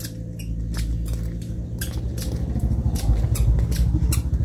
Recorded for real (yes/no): yes